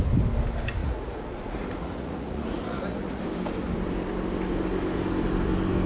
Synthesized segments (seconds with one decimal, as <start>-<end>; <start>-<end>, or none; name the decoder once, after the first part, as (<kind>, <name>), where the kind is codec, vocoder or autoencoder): 0.8-3.2 (vocoder, Vocos)